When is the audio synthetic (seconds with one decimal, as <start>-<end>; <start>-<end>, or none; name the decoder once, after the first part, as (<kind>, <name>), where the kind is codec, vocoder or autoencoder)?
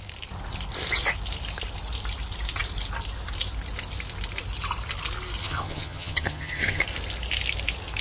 5.4-6.8 (vocoder, HiFi-GAN)